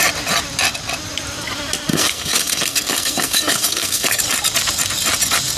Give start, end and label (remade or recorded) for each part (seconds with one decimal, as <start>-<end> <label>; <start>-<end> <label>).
0.0-1.9 recorded; 1.9-4.2 remade; 4.2-5.6 recorded